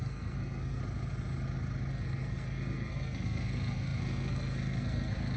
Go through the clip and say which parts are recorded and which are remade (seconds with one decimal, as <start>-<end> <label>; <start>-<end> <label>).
0.0-0.8 remade; 0.8-1.9 recorded; 1.9-5.4 remade